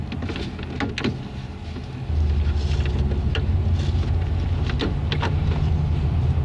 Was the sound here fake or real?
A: real